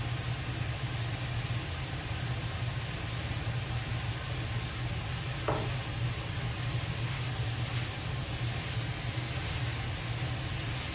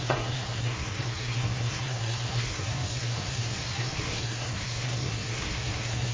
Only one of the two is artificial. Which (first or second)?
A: second